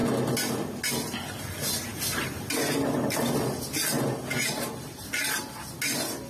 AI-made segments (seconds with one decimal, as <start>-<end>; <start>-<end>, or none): none